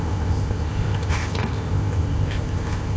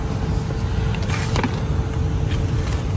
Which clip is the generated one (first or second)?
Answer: first